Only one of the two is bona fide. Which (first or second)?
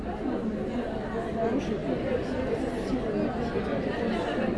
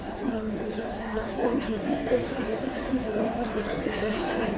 first